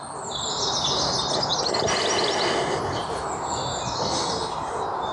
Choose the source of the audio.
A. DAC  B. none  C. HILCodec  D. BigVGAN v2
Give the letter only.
B